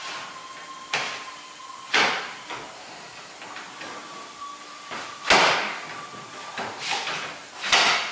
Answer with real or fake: real